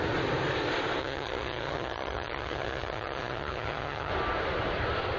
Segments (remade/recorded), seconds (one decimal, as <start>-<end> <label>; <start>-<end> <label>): 0.0-1.0 recorded; 1.0-4.1 remade; 4.1-5.2 recorded